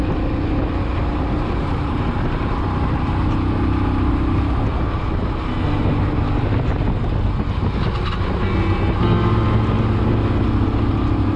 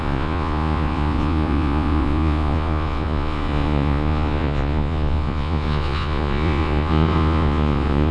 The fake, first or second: second